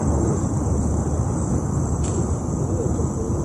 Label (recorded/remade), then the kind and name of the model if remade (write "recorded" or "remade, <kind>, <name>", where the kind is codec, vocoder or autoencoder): recorded